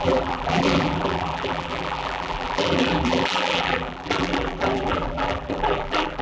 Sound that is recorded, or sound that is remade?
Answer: remade